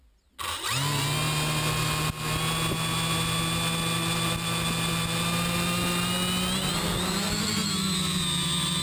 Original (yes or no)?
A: yes